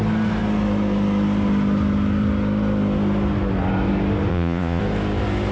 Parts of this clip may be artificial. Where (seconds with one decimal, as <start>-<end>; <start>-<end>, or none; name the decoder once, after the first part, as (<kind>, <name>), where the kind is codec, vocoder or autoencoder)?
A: 4.3-4.8 (vocoder, Vocos)